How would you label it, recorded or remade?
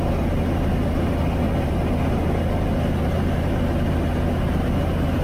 recorded